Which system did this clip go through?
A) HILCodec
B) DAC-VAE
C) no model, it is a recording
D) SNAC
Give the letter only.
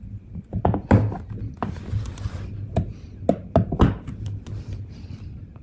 C